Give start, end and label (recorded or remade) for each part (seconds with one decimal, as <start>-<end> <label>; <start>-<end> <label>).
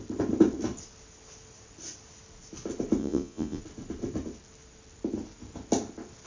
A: 0.0-3.0 recorded; 3.0-3.6 remade; 3.6-6.3 recorded